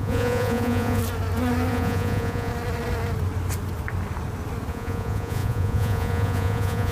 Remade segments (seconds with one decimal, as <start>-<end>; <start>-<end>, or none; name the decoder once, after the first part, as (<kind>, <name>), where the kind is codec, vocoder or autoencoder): 0.0-1.0 (vocoder, Vocos); 1.7-2.5; 4.7-6.9